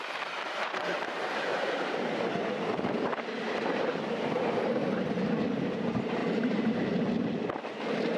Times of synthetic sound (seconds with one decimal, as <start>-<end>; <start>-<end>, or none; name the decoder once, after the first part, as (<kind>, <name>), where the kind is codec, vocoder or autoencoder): 0.0-1.5 (vocoder, BigVGAN v2); 5.4-6.2